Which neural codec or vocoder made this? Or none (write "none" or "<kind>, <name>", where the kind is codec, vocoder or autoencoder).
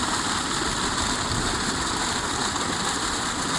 none